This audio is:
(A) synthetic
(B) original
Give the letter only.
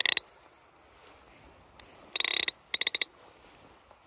B